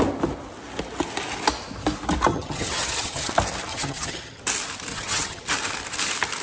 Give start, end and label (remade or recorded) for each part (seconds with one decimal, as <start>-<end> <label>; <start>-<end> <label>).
0.0-2.3 recorded; 2.3-3.3 remade; 3.3-3.7 recorded; 3.7-4.4 remade; 4.4-4.9 recorded; 4.9-5.4 remade; 5.4-6.4 recorded